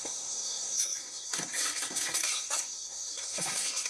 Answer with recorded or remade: remade